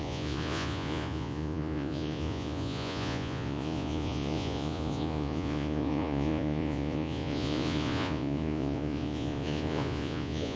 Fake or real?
fake